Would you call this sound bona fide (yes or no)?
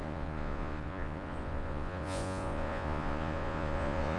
no